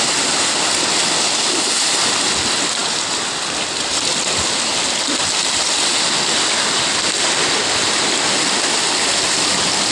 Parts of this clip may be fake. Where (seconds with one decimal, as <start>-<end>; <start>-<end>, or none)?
none